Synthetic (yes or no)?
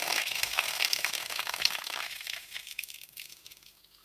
yes